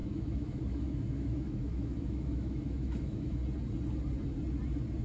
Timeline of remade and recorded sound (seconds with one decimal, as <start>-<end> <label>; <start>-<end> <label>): 0.0-3.4 remade; 3.4-5.0 recorded